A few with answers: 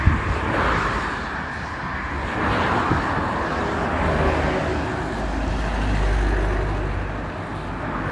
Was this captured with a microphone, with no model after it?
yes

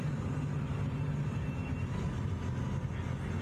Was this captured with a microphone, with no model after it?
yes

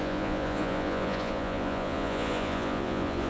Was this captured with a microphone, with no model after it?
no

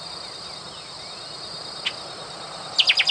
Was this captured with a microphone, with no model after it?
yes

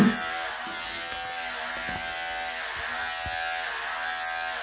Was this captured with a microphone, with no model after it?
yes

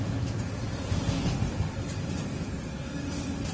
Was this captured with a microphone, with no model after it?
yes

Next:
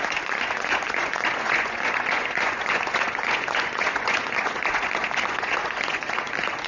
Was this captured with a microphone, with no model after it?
no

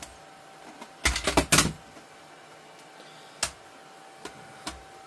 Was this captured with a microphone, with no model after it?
yes